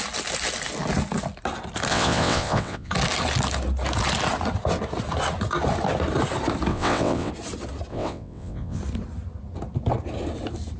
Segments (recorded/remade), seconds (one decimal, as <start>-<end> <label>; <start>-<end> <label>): 0.0-1.9 recorded; 1.9-2.9 remade; 2.9-6.7 recorded; 6.7-7.3 remade; 7.3-7.9 recorded; 7.9-8.8 remade; 8.8-10.8 recorded